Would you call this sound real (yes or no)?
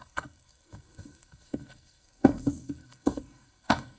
no